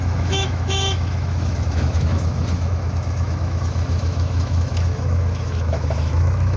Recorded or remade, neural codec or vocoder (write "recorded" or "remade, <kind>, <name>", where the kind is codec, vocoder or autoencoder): remade, autoencoder, DAC-VAE